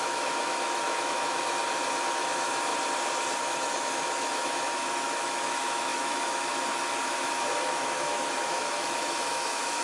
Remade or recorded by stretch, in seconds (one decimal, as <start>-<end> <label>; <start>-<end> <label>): 0.0-1.6 remade; 1.6-2.1 recorded; 2.1-2.7 remade; 2.7-3.4 recorded; 3.4-9.8 remade